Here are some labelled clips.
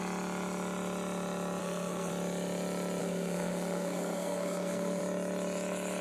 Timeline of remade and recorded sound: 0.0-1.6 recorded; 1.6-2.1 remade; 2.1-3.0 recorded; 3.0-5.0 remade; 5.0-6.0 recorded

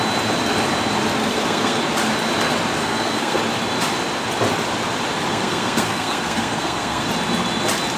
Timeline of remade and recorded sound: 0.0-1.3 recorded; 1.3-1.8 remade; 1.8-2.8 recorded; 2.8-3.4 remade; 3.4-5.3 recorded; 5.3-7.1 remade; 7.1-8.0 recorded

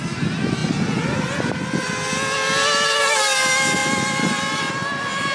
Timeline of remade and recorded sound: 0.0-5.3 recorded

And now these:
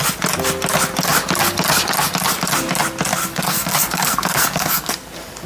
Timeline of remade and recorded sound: 0.0-3.2 recorded; 3.2-4.9 remade; 4.9-5.5 recorded

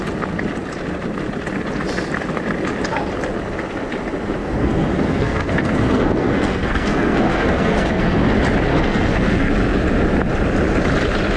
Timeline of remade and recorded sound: 0.0-4.4 recorded; 4.4-8.2 remade; 8.2-8.7 recorded; 8.7-9.5 remade; 9.5-11.4 recorded

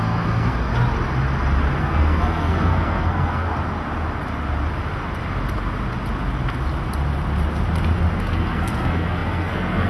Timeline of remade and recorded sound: 0.0-0.7 remade; 0.7-1.8 recorded; 1.8-3.5 remade; 3.5-8.2 recorded; 8.2-9.9 remade